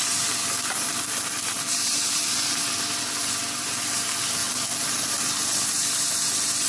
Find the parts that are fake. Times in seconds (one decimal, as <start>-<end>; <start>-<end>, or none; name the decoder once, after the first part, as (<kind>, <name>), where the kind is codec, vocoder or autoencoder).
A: 0.0-4.4 (vocoder, BigVGAN v2); 5.0-6.7